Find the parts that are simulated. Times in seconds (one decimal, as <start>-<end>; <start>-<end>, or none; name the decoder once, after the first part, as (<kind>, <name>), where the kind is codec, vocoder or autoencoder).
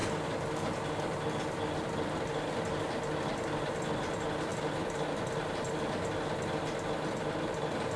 none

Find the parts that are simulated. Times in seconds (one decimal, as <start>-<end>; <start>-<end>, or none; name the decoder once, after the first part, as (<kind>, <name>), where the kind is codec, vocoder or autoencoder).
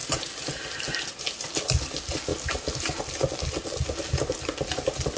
none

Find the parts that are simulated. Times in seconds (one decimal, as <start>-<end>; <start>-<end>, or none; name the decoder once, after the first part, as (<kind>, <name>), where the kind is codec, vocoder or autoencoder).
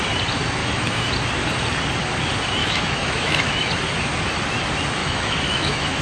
0.6-1.1 (autoencoder, DAC-VAE); 2.6-3.7; 5.0-6.0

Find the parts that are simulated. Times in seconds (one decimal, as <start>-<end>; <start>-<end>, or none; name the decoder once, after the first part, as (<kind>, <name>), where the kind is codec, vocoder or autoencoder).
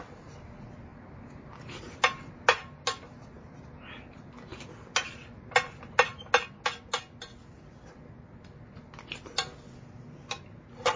none